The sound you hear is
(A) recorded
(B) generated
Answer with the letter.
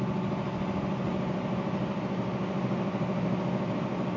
A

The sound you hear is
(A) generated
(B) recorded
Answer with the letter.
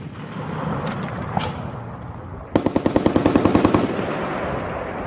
B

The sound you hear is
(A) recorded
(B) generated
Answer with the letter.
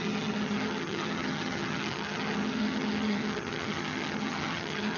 B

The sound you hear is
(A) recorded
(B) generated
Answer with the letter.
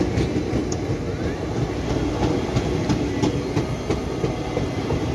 A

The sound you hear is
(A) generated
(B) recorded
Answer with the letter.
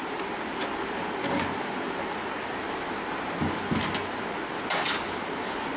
B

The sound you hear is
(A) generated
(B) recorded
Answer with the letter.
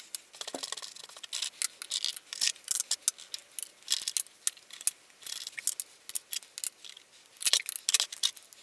B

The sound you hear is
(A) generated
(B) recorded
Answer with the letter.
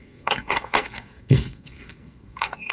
A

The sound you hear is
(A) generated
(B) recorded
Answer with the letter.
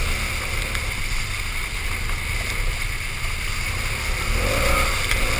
B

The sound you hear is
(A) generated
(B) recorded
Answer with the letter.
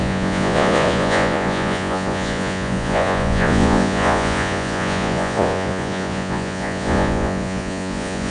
A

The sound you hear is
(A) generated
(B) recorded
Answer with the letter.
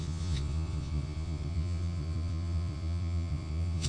A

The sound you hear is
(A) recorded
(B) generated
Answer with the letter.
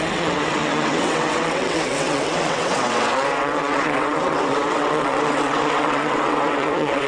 B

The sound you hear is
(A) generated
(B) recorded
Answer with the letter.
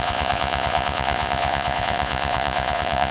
A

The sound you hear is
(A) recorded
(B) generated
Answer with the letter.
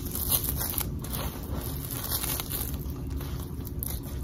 A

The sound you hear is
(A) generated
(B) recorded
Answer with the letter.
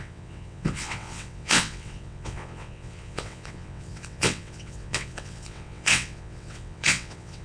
A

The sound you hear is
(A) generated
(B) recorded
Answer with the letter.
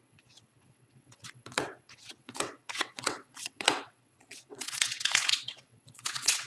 A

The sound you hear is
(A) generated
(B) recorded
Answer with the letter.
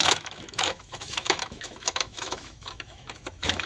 A